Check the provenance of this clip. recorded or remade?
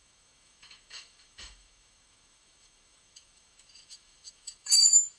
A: remade